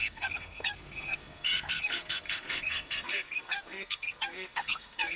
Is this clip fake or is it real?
fake